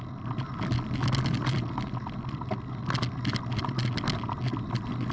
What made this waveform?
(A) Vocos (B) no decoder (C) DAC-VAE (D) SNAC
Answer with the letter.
B